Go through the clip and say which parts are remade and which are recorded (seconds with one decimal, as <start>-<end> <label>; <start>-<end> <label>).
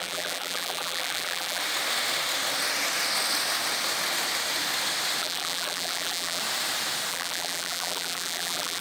0.0-1.6 remade; 1.6-5.2 recorded; 5.2-6.4 remade; 6.4-7.1 recorded; 7.1-8.8 remade